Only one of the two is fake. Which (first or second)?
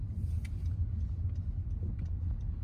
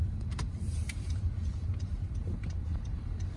second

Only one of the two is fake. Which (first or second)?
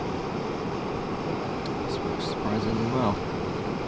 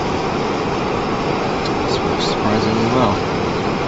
first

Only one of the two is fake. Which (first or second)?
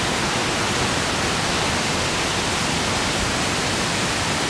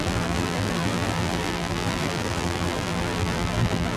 second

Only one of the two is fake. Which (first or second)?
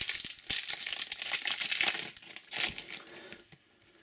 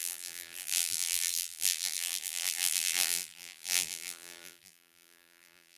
second